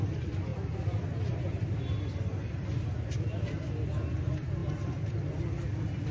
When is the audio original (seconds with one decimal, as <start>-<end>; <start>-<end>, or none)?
0.0-6.1